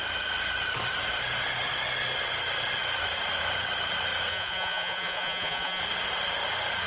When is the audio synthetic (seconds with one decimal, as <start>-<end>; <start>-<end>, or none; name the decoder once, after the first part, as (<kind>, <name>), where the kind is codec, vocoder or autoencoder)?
4.3-5.8 (vocoder, Vocos)

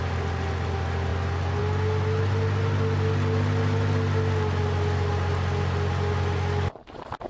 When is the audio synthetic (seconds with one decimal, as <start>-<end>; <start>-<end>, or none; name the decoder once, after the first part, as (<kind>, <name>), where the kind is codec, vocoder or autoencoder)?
none

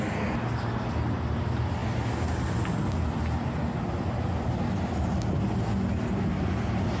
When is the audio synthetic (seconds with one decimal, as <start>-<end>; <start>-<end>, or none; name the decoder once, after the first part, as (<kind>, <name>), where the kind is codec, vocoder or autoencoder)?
none

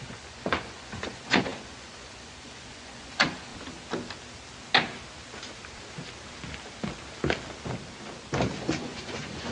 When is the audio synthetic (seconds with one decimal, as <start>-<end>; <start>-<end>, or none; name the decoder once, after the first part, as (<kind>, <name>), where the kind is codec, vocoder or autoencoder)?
0.0-3.5 (vocoder, Vocos); 8.6-9.5

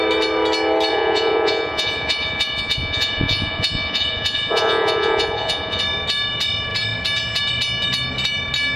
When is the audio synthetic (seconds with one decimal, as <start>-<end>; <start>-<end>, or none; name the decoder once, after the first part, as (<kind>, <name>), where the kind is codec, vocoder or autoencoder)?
0.9-5.8 (vocoder, Vocos)

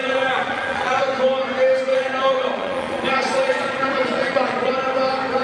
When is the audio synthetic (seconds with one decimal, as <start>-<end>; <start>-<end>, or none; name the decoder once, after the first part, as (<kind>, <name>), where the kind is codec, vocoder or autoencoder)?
0.0-1.0 (vocoder, Vocos); 1.9-4.7